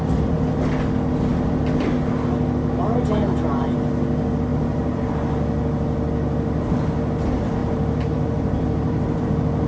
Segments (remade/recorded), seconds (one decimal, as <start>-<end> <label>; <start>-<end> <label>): 0.0-4.5 recorded; 4.5-5.1 remade; 5.1-7.6 recorded; 7.6-9.2 remade; 9.2-9.7 recorded